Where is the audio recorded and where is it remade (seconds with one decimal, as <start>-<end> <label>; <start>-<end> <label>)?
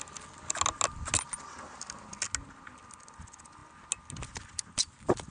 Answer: 0.0-5.3 recorded